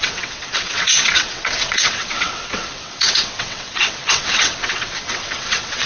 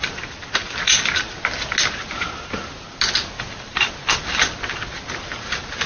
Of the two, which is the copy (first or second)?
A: first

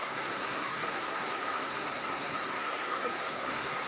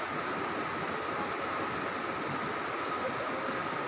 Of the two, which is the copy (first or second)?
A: first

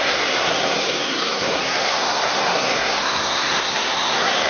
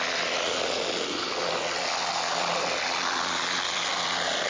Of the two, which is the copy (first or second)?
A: first